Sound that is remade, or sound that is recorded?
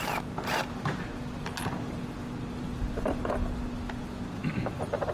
recorded